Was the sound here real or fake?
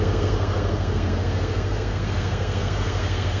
fake